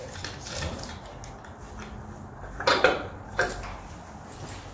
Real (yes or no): yes